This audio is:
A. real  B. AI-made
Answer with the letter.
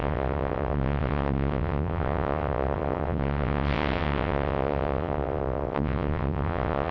B